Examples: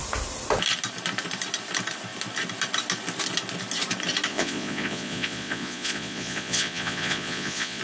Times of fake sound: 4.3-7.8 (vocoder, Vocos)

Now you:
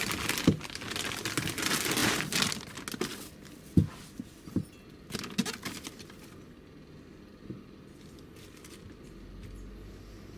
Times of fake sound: none

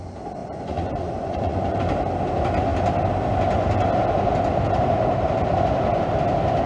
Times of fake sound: 0.4-1.8 (vocoder, Vocos)